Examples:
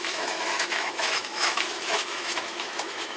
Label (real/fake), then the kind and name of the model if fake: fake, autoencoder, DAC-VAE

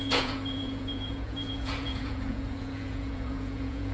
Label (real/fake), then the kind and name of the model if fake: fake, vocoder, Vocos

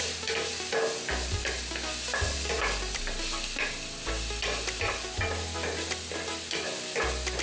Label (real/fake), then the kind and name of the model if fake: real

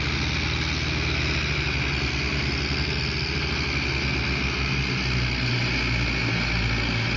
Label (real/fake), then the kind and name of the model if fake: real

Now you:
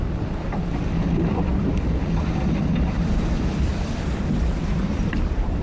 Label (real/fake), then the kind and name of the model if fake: fake, vocoder, BigVGAN v2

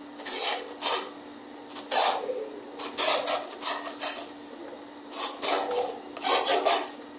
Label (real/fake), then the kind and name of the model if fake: real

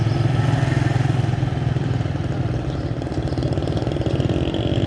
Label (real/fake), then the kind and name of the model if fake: real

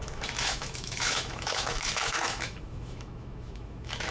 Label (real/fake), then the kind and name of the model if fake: fake, autoencoder, DAC-VAE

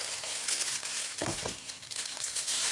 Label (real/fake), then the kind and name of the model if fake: fake, codec, SNAC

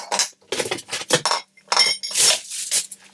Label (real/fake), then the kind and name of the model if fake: real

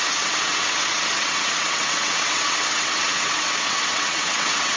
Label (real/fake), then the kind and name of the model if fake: fake, vocoder, WaveNeXt